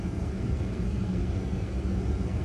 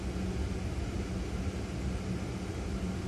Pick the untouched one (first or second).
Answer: second